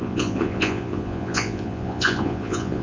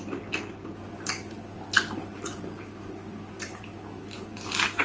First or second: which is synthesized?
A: first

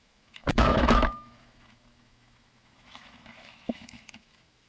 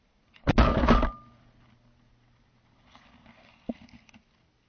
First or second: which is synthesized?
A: first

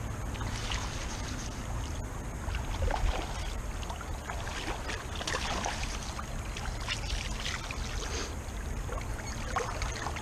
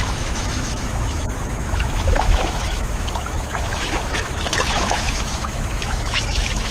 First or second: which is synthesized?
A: second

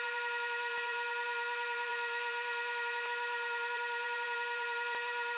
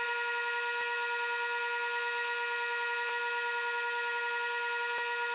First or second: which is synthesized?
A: first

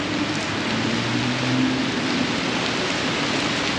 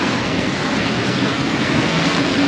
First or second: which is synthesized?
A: second